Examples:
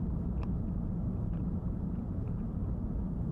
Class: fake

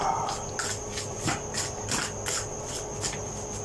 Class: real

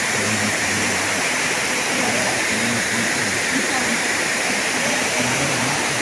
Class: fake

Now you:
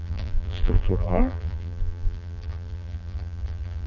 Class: fake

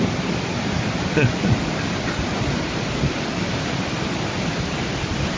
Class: fake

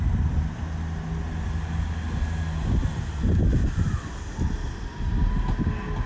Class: real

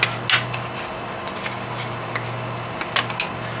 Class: real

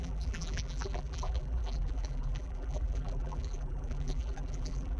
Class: fake